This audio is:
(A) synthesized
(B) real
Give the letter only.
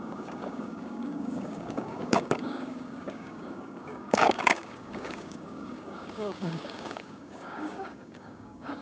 A